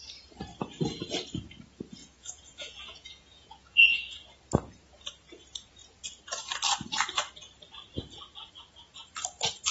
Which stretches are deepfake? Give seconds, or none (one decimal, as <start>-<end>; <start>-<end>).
2.0-4.2